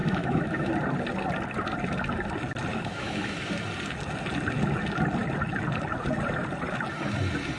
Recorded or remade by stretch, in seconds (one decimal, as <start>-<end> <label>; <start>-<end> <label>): 0.0-0.7 remade; 0.7-2.7 recorded; 2.7-3.5 remade; 3.5-7.6 recorded